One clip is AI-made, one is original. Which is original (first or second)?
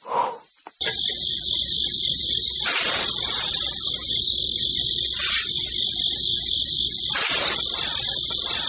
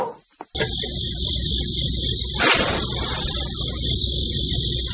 second